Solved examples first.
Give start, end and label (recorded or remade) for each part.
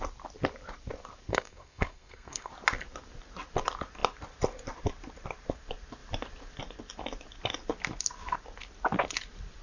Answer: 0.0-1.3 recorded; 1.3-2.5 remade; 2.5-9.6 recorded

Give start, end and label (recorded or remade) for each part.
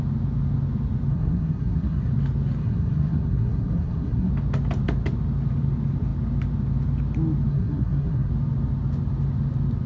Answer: 0.0-1.1 recorded; 1.1-2.1 remade; 2.1-2.6 recorded; 2.6-4.3 remade; 4.3-7.5 recorded; 7.5-8.3 remade; 8.3-9.9 recorded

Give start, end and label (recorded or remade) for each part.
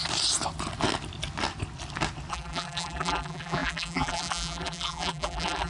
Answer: 0.0-2.3 recorded; 2.3-5.7 remade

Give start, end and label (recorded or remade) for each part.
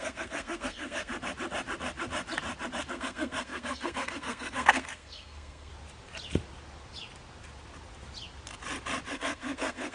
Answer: 0.0-1.1 remade; 1.1-2.9 recorded; 2.9-5.7 remade; 5.7-9.1 recorded; 9.1-9.9 remade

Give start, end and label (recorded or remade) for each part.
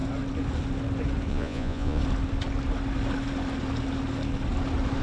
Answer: 0.0-1.3 recorded; 1.3-2.0 remade; 2.0-5.0 recorded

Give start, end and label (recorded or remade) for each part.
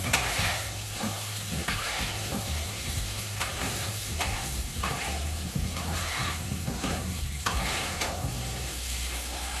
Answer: 0.0-9.6 remade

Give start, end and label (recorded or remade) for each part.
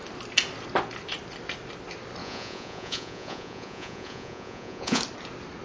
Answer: 0.0-2.2 recorded; 2.2-5.0 remade; 5.0-5.6 recorded